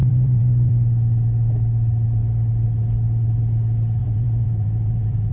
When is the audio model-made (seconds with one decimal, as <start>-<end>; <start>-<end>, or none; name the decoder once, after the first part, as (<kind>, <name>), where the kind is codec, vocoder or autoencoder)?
0.0-0.7 (vocoder, Vocos); 4.0-5.3